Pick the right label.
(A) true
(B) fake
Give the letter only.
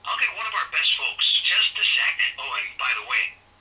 A